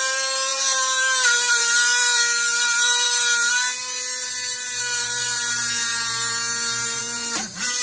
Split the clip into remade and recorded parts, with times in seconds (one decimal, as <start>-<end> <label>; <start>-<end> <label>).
0.0-5.9 remade; 5.9-7.0 recorded; 7.0-7.8 remade